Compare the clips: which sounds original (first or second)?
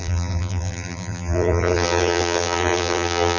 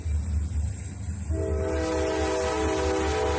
second